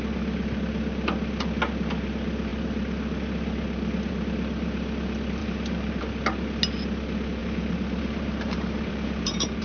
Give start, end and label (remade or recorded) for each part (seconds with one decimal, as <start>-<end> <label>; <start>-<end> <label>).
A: 0.0-5.4 recorded; 5.4-6.0 remade; 6.0-7.4 recorded; 7.4-9.6 remade

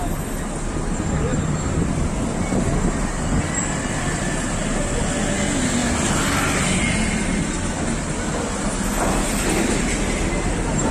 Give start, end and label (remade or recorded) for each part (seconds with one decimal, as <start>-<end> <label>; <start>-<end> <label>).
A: 0.0-10.9 recorded

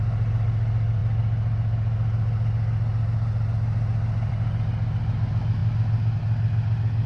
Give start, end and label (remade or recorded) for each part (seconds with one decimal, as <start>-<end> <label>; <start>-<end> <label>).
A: 0.0-7.1 recorded

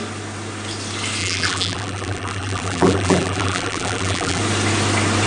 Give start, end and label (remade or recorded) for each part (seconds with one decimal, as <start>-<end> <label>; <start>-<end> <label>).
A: 0.0-1.2 recorded; 1.2-4.4 remade; 4.4-5.3 recorded

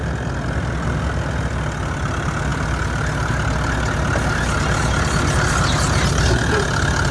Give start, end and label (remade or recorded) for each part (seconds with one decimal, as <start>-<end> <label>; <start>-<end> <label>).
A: 0.0-7.1 recorded